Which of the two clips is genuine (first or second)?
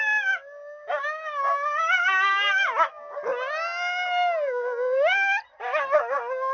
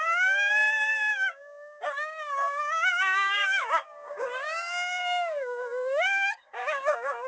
first